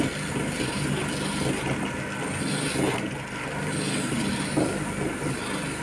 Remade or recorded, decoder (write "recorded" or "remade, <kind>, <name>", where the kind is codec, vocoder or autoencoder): recorded